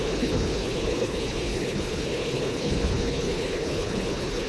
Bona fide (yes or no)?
no